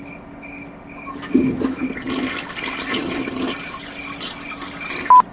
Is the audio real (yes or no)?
yes